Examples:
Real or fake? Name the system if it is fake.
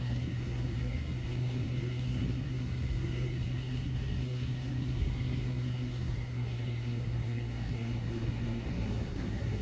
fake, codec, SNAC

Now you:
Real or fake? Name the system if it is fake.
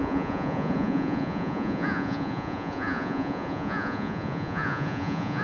fake, vocoder, Vocos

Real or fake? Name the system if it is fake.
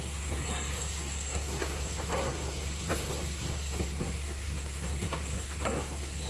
fake, codec, SNAC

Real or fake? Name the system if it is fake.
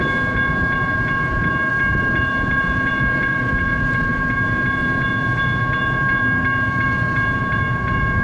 fake, vocoder, Vocos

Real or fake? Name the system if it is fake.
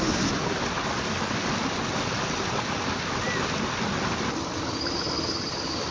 real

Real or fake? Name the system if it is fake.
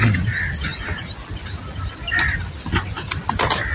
real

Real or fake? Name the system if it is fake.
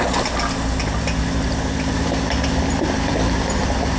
real